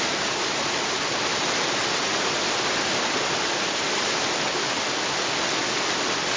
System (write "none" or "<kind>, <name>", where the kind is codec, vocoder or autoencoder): none